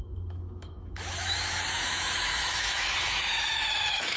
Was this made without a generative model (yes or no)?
no